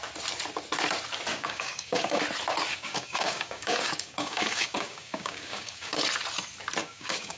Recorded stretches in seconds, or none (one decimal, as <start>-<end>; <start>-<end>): 0.0-1.3; 2.2-2.7; 6.0-6.8